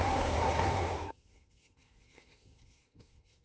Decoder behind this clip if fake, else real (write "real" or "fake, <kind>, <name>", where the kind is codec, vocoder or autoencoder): fake, codec, SNAC